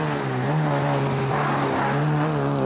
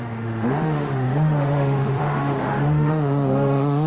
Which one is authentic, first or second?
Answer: first